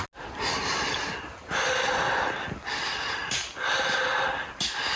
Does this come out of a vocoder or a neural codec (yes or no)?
no